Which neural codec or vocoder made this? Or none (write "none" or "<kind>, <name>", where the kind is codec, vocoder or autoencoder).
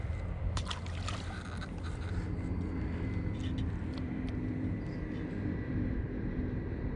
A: none